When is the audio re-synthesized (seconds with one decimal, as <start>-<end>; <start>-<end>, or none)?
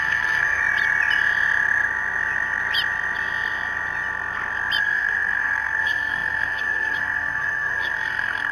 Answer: 0.0-0.6; 4.8-8.5